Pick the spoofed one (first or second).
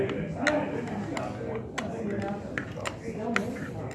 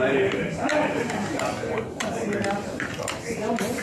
second